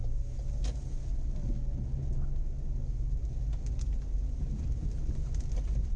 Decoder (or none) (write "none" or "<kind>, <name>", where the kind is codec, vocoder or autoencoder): none